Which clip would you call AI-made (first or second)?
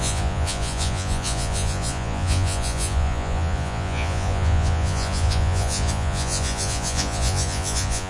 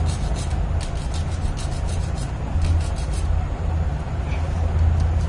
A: first